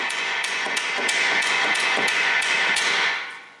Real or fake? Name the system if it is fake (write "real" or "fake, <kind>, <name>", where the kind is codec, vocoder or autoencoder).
fake, vocoder, Vocos